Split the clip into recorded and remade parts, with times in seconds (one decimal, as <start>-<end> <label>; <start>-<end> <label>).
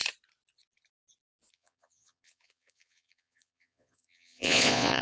0.0-1.5 recorded; 1.5-5.0 remade